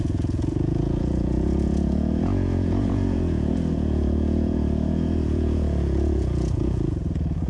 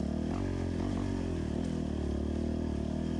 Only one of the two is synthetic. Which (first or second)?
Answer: first